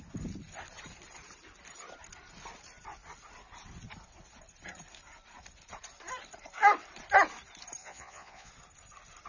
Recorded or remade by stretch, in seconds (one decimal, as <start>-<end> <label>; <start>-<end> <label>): 0.0-7.8 recorded; 7.8-8.5 remade; 8.5-9.3 recorded